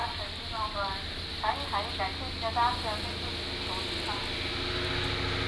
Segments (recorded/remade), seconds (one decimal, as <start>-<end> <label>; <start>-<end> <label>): 0.0-5.5 recorded